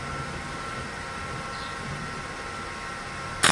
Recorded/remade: recorded